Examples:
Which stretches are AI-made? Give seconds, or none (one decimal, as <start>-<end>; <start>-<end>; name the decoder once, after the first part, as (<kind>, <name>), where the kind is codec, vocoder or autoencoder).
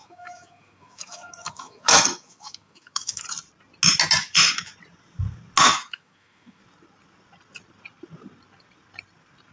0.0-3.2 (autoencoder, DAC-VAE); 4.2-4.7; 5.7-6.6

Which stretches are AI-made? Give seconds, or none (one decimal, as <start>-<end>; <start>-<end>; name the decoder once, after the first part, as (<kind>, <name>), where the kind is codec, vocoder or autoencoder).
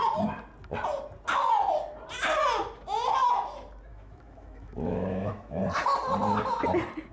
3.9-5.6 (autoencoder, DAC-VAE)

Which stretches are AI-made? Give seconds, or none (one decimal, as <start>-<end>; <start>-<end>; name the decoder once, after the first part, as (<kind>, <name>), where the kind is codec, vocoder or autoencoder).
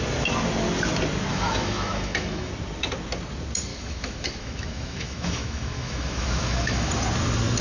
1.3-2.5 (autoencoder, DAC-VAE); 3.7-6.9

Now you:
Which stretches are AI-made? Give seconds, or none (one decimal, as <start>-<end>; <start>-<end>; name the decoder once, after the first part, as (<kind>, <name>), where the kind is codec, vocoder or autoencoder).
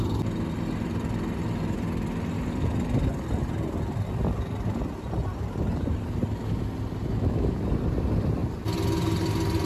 7.1-7.6 (autoencoder, DAC-VAE)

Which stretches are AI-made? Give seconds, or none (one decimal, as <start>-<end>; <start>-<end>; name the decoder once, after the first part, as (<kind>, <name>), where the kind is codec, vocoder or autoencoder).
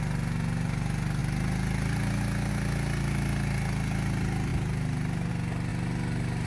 none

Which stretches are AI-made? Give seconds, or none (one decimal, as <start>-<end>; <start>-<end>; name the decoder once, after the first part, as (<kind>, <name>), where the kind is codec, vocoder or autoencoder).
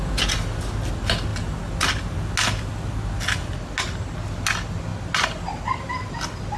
none